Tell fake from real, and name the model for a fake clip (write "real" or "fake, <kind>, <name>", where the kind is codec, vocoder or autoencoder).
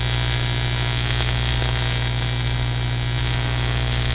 real